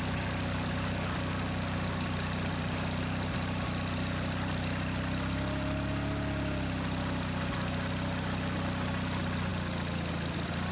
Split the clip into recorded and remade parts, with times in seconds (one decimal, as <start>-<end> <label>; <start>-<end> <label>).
0.0-10.7 recorded